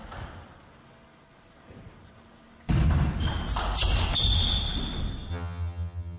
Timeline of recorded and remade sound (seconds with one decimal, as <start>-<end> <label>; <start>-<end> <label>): 0.0-5.3 recorded; 5.3-6.2 remade

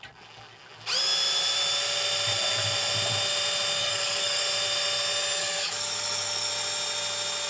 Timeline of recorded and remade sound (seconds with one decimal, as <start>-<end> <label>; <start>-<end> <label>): 0.0-3.8 recorded; 3.8-4.4 remade; 4.4-5.4 recorded; 5.4-6.5 remade; 6.5-7.5 recorded

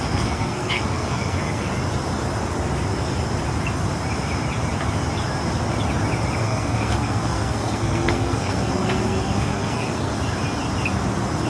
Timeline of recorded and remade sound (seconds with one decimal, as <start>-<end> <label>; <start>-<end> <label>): 0.0-1.7 remade; 1.7-6.4 recorded; 6.4-10.1 remade; 10.1-11.5 recorded

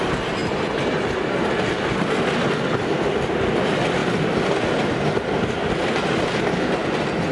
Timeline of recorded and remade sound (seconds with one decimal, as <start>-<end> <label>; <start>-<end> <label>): 0.0-7.3 recorded